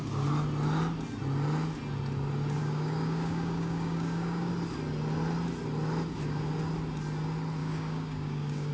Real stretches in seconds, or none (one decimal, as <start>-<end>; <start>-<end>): 0.0-2.6; 4.5-7.6